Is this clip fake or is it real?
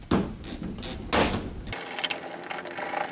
real